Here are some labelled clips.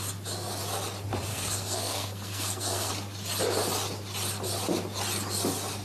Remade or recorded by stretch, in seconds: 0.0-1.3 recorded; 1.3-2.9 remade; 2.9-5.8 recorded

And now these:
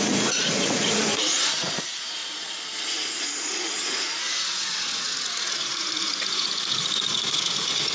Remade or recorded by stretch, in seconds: 0.0-7.9 remade

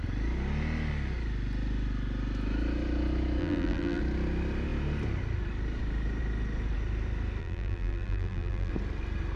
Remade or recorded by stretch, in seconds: 0.0-3.4 recorded; 3.4-4.0 remade; 4.0-7.4 recorded; 7.4-8.7 remade; 8.7-9.4 recorded

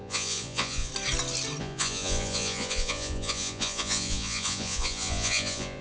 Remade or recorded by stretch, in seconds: 0.0-0.9 remade; 0.9-1.6 recorded; 1.6-5.8 remade

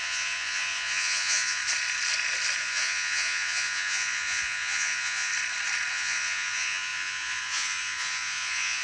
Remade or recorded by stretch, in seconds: 0.0-1.6 remade; 1.6-2.6 recorded; 2.6-5.3 remade; 5.3-5.9 recorded; 5.9-8.8 remade

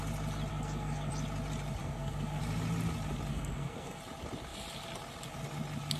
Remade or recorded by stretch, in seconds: 0.0-0.5 recorded; 0.5-1.1 remade; 1.1-1.8 recorded; 1.8-2.4 remade; 2.4-3.3 recorded; 3.3-4.0 remade; 4.0-6.0 recorded

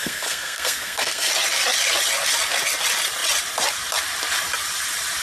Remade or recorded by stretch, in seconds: 0.0-1.3 remade; 1.3-5.2 recorded

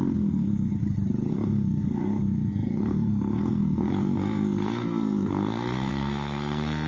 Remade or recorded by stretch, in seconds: 0.0-0.8 remade; 0.8-1.3 recorded; 1.3-6.9 remade